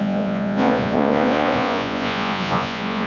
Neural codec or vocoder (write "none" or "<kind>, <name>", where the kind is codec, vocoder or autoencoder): vocoder, Vocos